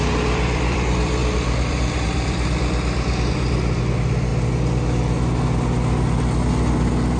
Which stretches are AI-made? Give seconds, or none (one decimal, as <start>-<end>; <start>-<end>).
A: 0.0-4.3